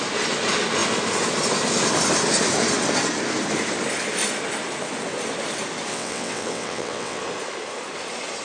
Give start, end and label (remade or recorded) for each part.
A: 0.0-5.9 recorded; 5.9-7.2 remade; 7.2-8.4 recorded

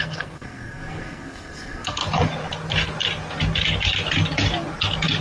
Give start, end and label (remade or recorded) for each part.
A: 0.0-2.0 remade; 2.0-5.2 recorded